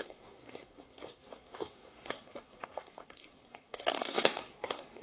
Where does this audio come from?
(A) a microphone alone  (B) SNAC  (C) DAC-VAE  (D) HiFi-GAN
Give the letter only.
B